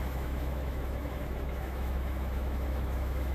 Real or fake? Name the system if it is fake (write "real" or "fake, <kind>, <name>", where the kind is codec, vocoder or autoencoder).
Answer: fake, autoencoder, DAC-VAE